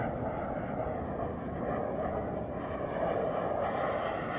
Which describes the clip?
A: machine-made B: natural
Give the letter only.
B